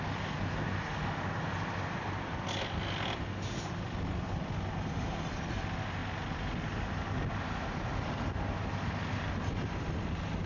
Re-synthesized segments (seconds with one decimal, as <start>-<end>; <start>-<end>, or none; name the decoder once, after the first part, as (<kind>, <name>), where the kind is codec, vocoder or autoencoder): none